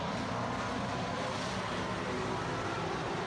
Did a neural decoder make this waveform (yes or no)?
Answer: no